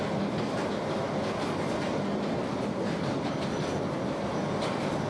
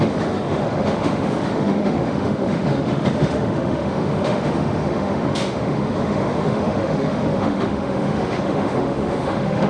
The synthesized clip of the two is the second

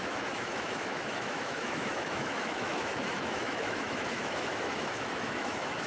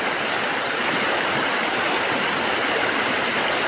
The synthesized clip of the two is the first